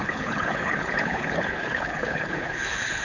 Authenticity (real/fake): fake